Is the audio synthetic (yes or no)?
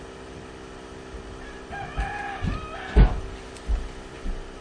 no